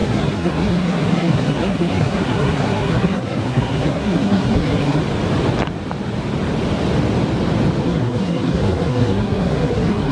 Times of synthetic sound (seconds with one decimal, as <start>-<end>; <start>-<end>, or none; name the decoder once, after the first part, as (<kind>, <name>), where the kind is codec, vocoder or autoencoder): 0.0-5.0 (codec, SNAC); 7.8-10.1